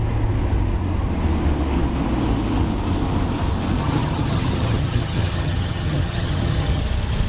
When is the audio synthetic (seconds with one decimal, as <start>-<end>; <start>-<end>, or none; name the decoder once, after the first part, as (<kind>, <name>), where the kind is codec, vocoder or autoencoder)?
3.8-6.8 (vocoder, HiFi-GAN)